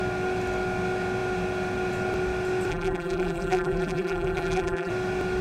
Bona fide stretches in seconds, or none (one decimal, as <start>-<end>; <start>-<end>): 0.0-2.7; 4.9-5.4